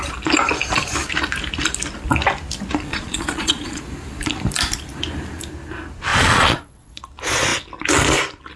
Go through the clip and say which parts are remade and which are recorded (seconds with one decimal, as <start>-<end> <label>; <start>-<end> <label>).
0.0-2.9 recorded; 2.9-3.8 remade; 3.8-6.1 recorded; 6.1-7.0 remade; 7.0-8.6 recorded